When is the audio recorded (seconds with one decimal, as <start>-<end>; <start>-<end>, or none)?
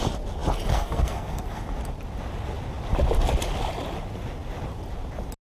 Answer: 0.0-0.7; 1.6-5.5